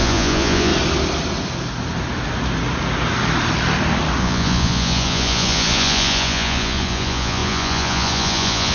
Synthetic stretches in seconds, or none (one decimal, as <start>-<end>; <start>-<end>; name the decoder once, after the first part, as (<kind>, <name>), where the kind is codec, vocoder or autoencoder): 0.0-0.7 (vocoder, Vocos); 4.2-8.7